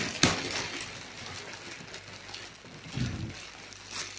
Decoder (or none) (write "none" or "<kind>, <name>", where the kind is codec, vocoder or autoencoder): none